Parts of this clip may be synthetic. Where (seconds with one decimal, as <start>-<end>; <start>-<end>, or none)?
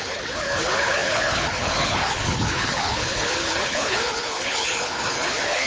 0.0-5.7